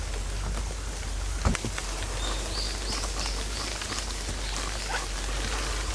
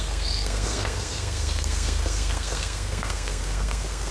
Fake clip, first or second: second